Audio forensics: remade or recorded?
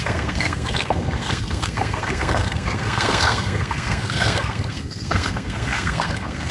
remade